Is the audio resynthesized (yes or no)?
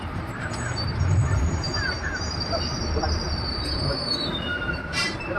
yes